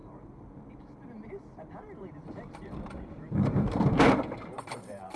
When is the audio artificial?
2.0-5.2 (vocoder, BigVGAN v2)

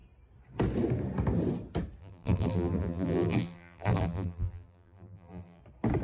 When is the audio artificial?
2.0-5.6 (vocoder, BigVGAN v2)

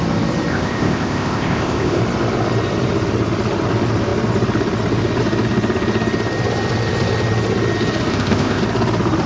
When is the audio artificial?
0.5-2.0 (codec, ZipCodec); 8.1-8.6

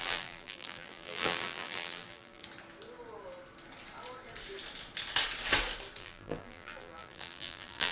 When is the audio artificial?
0.0-2.4 (vocoder, BigVGAN v2); 6.0-7.9

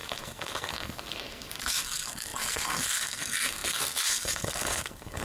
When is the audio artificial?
0.0-5.2 (codec, SNAC)